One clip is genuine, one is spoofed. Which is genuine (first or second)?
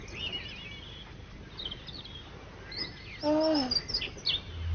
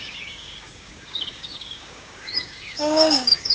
first